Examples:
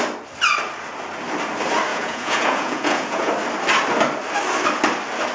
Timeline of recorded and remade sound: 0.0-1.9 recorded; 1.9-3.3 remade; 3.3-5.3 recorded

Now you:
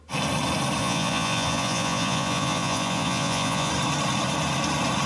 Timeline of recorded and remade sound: 0.0-0.8 recorded; 0.8-3.7 remade; 3.7-5.1 recorded

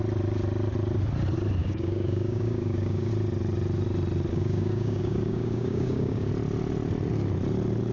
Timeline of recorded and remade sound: 0.0-1.6 recorded; 1.6-3.1 remade; 3.1-4.3 recorded; 4.3-6.3 remade; 6.3-7.9 recorded

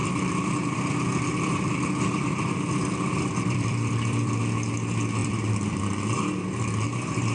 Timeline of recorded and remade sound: 0.0-4.4 remade; 4.4-5.2 recorded; 5.2-5.8 remade; 5.8-7.3 recorded